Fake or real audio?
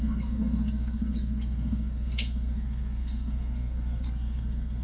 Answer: fake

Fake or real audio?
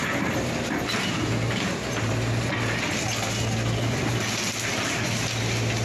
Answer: real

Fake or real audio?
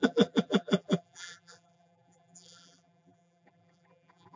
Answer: fake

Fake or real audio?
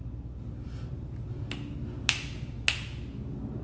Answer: real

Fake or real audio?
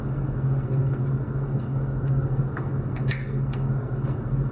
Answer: fake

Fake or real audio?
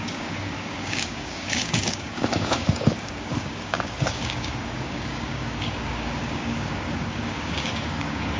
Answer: fake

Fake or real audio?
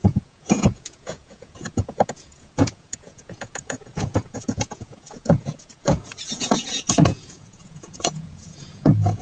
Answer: fake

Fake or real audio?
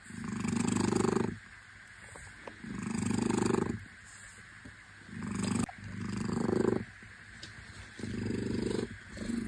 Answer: real